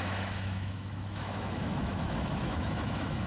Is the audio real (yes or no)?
no